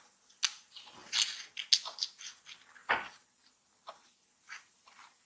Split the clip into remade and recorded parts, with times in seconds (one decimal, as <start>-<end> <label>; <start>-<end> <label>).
0.0-5.3 recorded